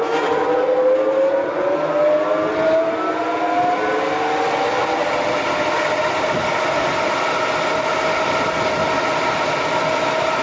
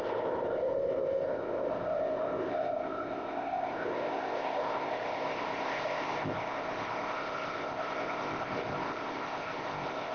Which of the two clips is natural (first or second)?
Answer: first